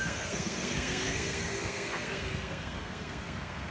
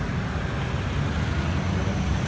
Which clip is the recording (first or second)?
second